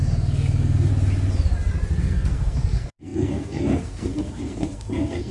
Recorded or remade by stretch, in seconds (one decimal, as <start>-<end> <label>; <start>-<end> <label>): 0.0-0.9 remade; 0.9-2.0 recorded; 2.0-5.3 remade